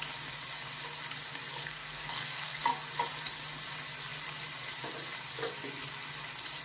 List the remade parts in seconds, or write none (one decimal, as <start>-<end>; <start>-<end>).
1.6-2.6